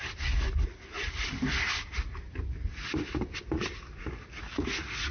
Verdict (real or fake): real